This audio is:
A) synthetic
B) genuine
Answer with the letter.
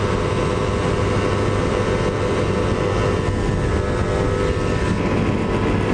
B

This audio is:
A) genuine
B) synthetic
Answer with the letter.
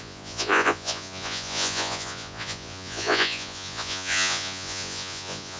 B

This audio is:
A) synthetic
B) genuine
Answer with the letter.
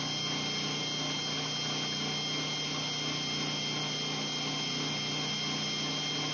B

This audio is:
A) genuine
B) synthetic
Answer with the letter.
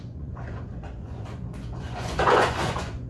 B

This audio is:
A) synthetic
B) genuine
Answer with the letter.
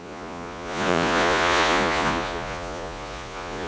A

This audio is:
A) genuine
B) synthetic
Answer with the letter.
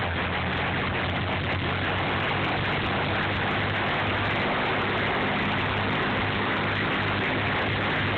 A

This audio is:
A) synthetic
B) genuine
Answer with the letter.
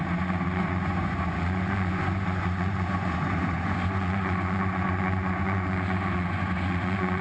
A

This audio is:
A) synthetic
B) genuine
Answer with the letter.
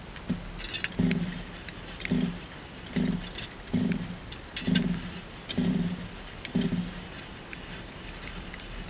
B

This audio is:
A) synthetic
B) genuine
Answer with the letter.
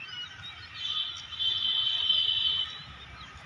B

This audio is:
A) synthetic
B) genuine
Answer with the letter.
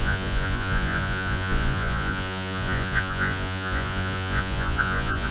A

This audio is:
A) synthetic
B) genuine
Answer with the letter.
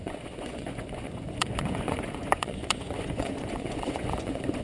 A